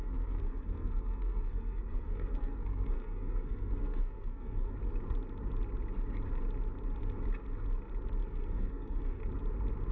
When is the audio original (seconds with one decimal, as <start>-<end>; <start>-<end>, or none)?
4.7-8.2; 9.2-9.9